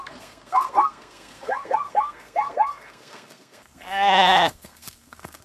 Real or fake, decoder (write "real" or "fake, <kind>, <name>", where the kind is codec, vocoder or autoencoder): fake, codec, SNAC